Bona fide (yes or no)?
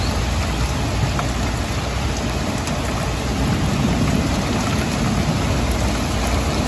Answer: yes